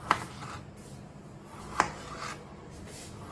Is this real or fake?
real